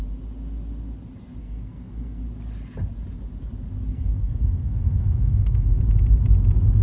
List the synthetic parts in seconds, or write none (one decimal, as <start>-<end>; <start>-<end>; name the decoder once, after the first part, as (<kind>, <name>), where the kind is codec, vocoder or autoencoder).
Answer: 1.4-2.2 (codec, SNAC); 3.9-5.8